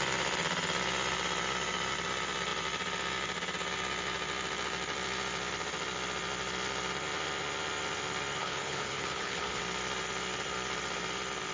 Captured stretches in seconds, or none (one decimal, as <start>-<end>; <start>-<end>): 0.0-8.4; 9.6-11.5